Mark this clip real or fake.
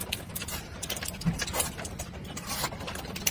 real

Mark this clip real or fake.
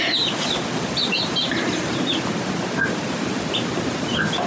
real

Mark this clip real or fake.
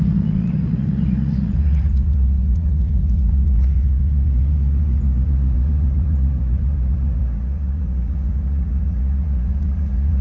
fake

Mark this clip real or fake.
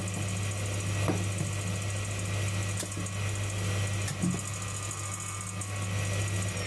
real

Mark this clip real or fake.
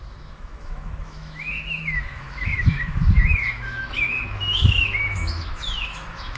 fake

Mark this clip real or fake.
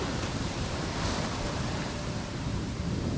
fake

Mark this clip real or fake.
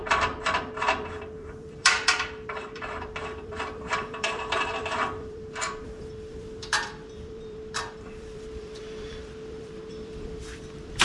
fake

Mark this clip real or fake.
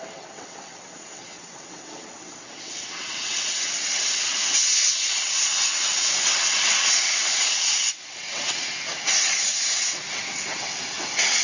fake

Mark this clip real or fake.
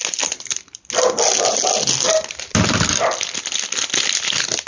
real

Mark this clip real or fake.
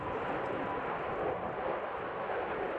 real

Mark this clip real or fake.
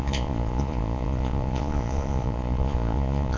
fake